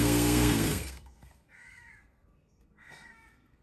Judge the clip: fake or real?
fake